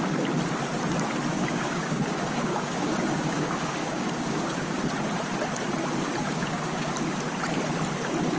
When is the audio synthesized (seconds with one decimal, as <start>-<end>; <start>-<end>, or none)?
1.3-4.8; 6.2-6.9

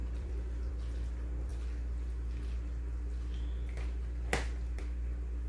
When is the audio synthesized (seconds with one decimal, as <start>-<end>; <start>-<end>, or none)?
0.0-0.7

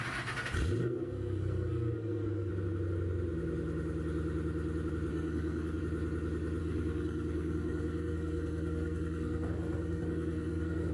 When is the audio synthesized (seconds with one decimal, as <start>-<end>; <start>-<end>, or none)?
0.8-2.5; 5.1-5.8; 6.6-10.9

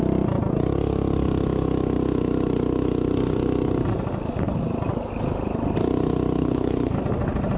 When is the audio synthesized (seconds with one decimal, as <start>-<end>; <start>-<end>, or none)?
6.4-7.0

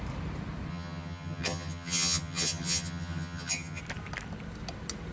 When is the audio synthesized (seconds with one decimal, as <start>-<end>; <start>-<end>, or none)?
0.7-3.8

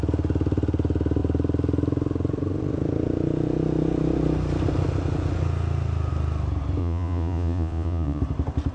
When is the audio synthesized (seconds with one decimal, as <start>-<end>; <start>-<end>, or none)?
6.8-8.2

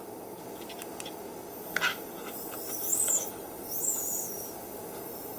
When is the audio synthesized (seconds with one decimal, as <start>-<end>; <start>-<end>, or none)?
none

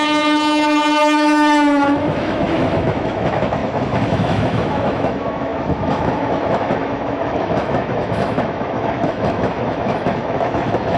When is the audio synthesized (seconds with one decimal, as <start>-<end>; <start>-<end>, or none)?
0.0-11.0